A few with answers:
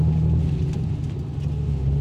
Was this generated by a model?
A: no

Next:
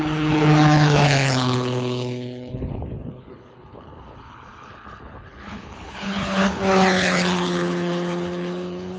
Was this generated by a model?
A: yes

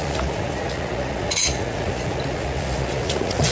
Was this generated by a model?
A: yes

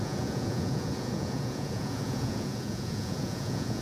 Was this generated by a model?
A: yes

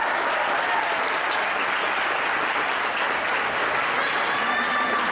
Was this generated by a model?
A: no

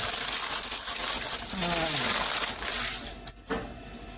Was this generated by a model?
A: no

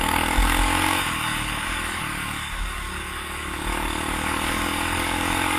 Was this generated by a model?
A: yes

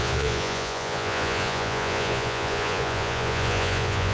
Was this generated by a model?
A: yes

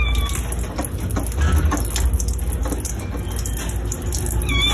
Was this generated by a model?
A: no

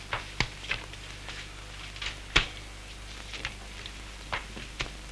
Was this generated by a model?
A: no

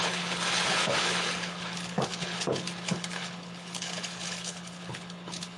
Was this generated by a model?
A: yes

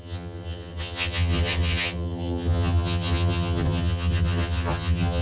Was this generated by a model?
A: yes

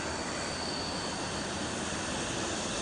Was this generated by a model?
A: no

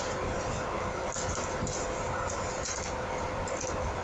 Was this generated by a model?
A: no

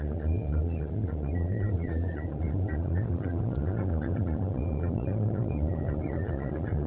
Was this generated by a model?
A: yes